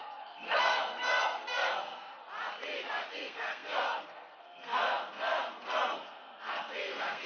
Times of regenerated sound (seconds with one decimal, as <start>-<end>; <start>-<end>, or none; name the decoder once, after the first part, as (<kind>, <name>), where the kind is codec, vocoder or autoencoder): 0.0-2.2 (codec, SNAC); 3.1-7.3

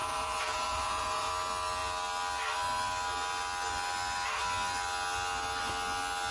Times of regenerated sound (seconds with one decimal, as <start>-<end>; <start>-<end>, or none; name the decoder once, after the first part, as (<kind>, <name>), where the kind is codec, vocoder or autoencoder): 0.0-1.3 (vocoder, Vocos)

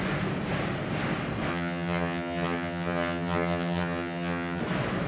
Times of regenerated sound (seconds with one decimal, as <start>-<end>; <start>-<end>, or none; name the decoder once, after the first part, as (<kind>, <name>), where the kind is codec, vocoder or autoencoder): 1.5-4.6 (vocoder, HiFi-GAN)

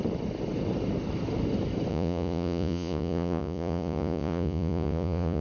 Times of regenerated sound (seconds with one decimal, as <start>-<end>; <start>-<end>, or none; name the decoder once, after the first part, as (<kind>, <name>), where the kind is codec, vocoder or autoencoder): 1.9-5.4 (vocoder, Vocos)